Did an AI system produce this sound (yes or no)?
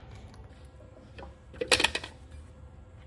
no